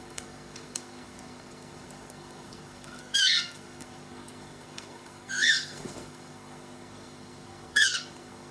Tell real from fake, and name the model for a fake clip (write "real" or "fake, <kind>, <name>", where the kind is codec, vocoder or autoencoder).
fake, codec, SNAC